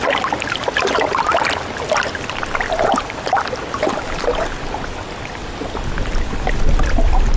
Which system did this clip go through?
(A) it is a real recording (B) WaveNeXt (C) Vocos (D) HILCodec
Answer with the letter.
A